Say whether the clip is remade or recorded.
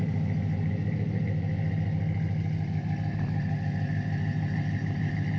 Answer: recorded